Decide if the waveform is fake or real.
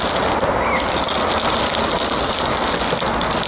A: real